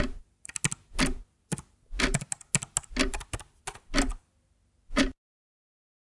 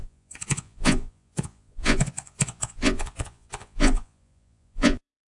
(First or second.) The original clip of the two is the first